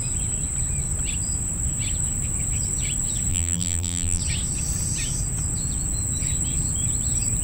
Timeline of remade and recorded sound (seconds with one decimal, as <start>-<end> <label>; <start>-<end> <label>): 0.0-3.3 recorded; 3.3-4.2 remade; 4.2-7.4 recorded